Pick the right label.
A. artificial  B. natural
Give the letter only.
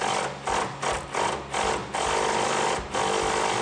B